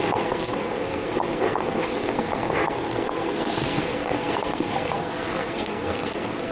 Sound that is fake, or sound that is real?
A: fake